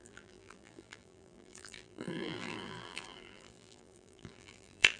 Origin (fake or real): fake